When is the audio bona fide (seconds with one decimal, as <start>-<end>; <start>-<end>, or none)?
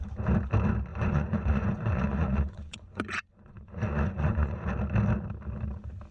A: 0.0-0.9; 4.6-6.1